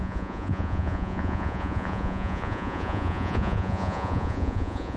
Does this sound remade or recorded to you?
remade